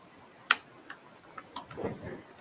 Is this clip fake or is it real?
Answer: real